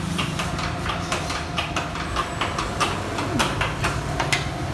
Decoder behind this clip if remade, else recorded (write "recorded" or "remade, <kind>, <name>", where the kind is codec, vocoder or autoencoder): remade, vocoder, BigVGAN v2